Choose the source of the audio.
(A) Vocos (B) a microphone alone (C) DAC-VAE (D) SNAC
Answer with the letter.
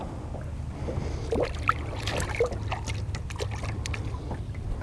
B